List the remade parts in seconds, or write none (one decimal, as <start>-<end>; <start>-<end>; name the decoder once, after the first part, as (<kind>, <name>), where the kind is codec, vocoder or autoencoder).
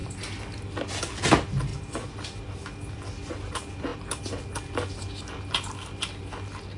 none